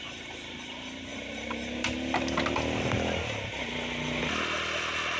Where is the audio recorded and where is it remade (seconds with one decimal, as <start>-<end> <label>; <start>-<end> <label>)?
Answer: 0.0-5.2 recorded